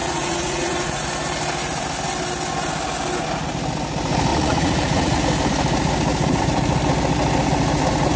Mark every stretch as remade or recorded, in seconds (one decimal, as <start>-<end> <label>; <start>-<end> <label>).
0.0-1.1 remade; 1.1-4.3 recorded; 4.3-5.2 remade; 5.2-8.2 recorded